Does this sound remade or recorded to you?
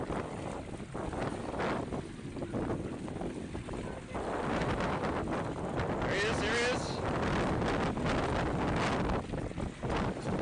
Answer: recorded